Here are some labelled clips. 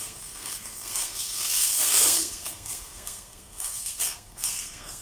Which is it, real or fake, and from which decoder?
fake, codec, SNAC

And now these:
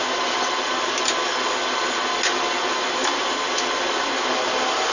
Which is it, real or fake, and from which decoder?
real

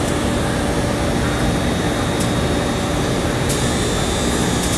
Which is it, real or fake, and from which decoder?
real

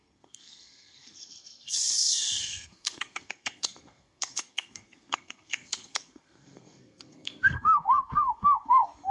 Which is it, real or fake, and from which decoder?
fake, codec, SNAC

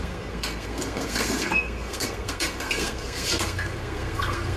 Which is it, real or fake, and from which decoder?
fake, codec, SNAC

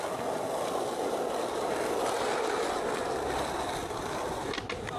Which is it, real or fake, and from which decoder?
real